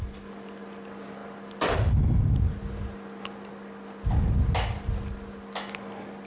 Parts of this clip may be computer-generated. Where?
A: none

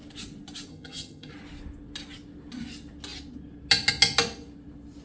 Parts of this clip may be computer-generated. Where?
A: 0.7-1.3 (vocoder, HiFi-GAN)

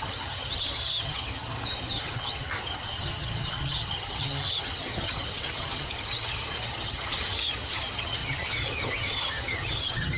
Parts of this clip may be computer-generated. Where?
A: 0.0-10.2 (vocoder, HiFi-GAN)

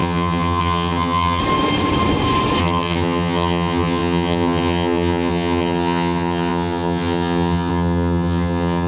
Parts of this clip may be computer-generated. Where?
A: 0.0-1.4 (vocoder, HiFi-GAN); 2.6-8.9

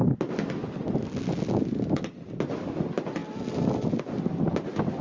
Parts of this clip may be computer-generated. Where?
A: none

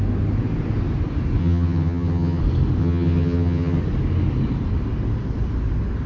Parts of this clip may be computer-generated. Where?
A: 1.4-2.4 (vocoder, HiFi-GAN); 2.8-3.8